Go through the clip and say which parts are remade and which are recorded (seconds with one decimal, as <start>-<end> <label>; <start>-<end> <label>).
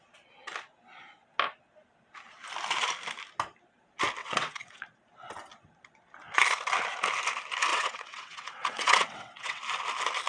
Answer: 0.0-4.2 recorded; 4.2-4.8 remade; 4.8-7.7 recorded; 7.7-9.6 remade; 9.6-10.3 recorded